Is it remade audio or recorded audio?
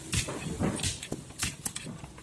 recorded